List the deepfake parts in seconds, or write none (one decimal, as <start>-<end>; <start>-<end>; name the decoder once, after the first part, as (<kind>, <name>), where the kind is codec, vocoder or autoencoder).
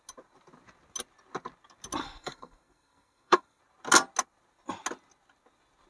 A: 2.0-3.6 (codec, SNAC)